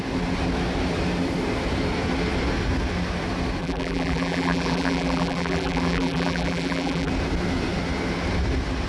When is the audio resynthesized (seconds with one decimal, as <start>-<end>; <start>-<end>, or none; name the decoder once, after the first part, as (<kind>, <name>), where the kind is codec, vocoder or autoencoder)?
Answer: 3.6-7.1 (vocoder, BigVGAN v2)